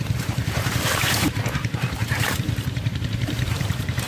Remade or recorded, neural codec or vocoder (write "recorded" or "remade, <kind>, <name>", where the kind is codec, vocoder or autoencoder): remade, vocoder, BigVGAN v2